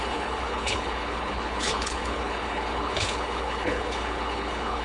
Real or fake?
fake